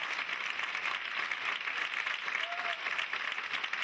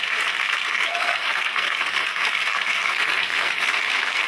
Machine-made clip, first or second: second